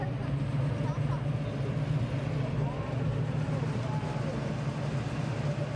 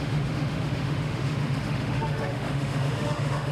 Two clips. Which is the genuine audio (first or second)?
first